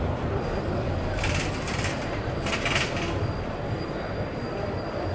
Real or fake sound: fake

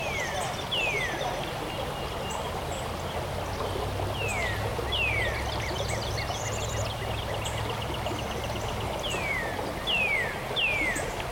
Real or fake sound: real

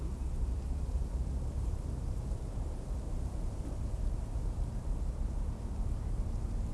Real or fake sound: fake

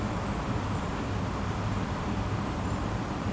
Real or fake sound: fake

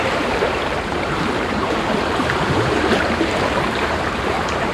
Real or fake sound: fake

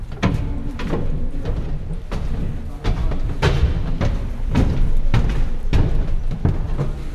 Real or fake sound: real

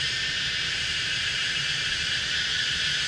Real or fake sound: fake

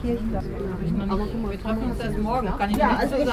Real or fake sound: real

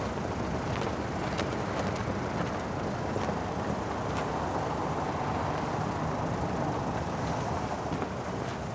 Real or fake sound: fake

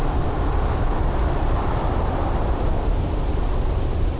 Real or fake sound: fake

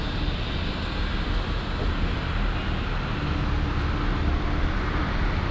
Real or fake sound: real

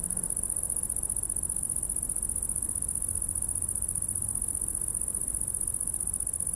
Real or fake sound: real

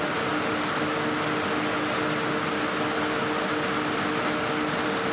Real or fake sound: real